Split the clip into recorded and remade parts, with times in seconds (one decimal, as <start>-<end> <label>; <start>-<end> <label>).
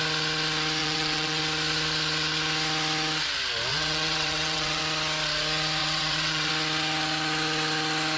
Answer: 0.0-0.8 recorded; 0.8-1.4 remade; 1.4-3.7 recorded; 3.7-4.8 remade; 4.8-5.8 recorded; 5.8-6.5 remade; 6.5-8.2 recorded